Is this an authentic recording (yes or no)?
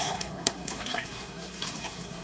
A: no